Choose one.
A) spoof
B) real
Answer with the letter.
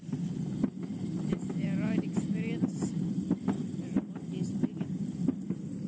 B